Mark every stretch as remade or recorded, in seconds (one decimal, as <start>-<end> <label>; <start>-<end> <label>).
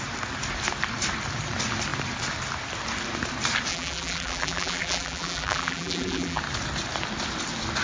0.0-3.7 recorded; 3.7-6.4 remade; 6.4-7.8 recorded